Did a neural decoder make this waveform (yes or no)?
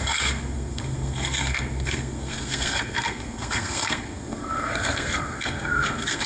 yes